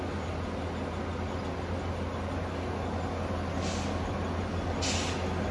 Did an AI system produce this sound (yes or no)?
no